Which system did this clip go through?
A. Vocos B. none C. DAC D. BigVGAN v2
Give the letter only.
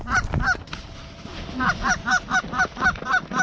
B